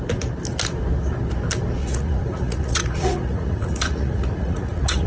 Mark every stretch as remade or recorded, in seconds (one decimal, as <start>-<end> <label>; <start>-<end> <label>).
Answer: 0.0-1.8 recorded; 1.8-5.1 remade